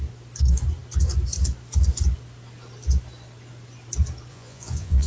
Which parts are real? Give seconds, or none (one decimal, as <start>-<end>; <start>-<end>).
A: 0.0-4.3